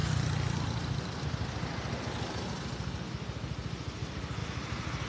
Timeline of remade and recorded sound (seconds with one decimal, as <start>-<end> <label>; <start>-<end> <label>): 0.0-5.1 recorded